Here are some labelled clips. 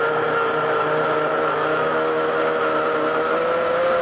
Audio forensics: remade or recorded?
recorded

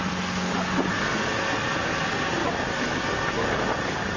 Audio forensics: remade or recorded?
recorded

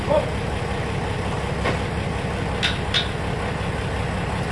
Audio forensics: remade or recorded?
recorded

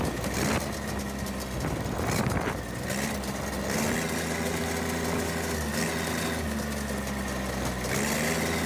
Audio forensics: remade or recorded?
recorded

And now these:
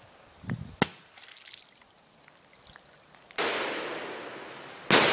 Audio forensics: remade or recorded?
recorded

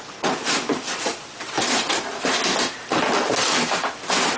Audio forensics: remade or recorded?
recorded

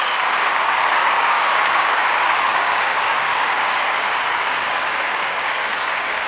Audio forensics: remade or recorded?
remade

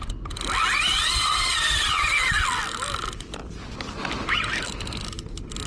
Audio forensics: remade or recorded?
recorded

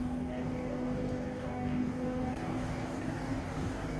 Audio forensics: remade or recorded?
remade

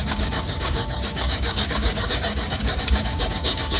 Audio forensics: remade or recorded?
remade